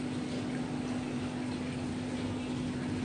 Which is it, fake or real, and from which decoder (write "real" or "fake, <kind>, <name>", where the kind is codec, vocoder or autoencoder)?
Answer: real